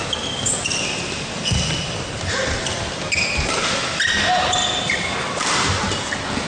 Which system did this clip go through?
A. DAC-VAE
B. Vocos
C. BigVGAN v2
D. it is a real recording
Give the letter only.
D